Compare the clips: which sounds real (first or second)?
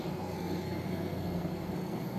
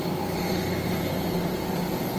second